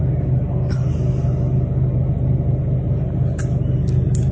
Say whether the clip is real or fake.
real